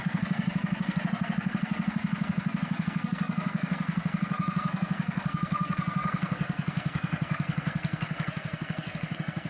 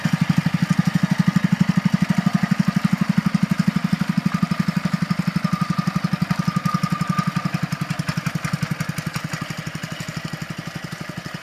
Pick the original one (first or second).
second